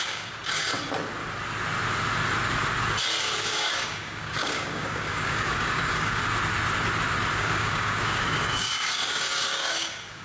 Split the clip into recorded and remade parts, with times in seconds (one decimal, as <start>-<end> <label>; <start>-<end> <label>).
0.0-0.7 remade; 0.7-3.2 recorded; 3.2-6.2 remade; 6.2-7.3 recorded; 7.3-10.2 remade